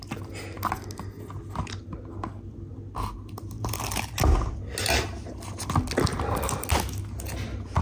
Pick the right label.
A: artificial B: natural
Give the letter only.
B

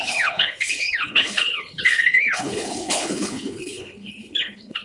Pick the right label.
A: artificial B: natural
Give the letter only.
A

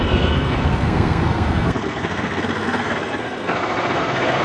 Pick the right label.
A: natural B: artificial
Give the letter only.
B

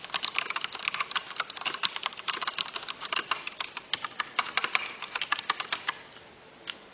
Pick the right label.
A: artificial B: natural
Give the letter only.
B